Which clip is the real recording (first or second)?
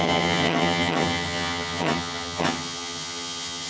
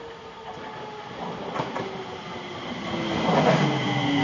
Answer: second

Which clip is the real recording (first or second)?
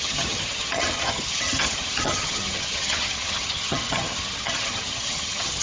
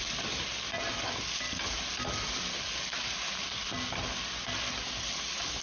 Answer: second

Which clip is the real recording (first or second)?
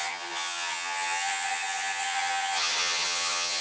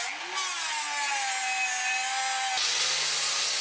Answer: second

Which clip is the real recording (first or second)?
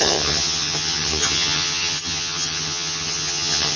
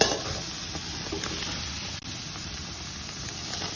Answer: second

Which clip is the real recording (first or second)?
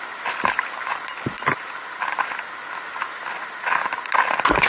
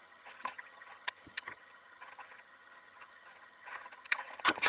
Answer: first